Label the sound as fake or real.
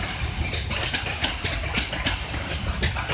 real